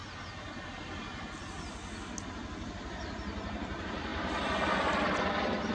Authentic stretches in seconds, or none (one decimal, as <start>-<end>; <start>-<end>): 0.0-2.7; 4.1-5.2